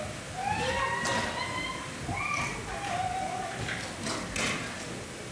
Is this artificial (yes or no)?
no